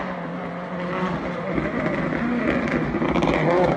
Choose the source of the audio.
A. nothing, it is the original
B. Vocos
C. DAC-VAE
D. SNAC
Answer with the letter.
A